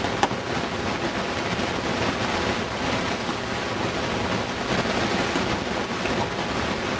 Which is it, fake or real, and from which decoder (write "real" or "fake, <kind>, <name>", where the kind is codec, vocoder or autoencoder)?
real